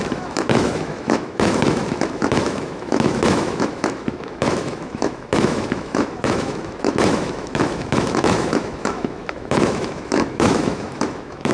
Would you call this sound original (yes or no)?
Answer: no